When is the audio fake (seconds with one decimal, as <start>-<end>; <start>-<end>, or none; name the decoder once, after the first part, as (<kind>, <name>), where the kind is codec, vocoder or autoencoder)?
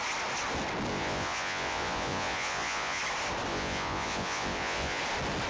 0.9-3.0 (vocoder, Vocos); 3.5-5.0